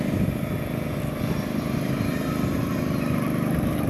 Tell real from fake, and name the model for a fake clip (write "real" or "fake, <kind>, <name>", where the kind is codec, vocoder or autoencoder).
fake, vocoder, BigVGAN v2